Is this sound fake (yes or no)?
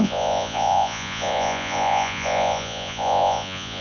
yes